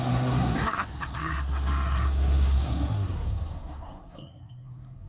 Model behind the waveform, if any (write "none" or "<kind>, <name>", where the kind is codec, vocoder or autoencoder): codec, SNAC